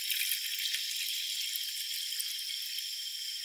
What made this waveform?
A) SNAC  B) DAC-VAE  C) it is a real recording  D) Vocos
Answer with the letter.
C